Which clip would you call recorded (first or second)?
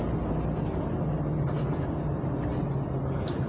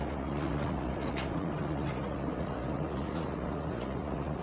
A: first